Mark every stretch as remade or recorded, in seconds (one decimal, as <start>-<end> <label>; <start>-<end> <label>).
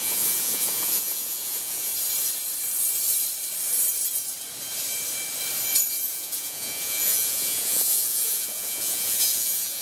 0.0-1.9 remade; 1.9-6.1 recorded; 6.1-9.8 remade